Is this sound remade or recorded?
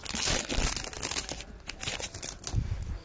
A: recorded